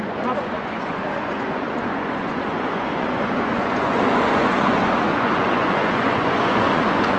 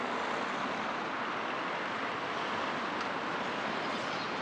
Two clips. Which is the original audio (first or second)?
second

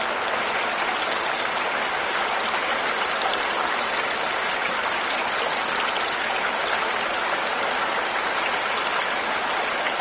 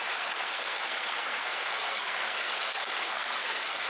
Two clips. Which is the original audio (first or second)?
first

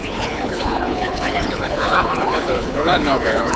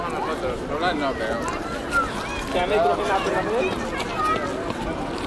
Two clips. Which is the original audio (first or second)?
second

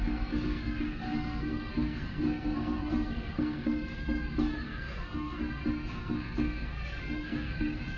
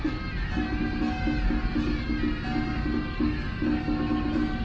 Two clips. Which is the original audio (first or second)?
second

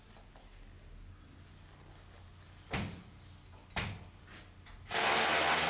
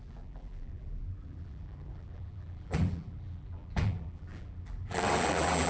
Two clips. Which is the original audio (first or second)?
first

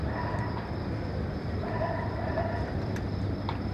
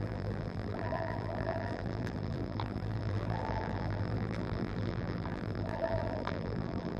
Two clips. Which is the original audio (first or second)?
first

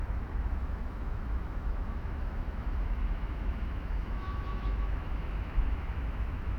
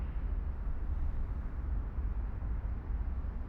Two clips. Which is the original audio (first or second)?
second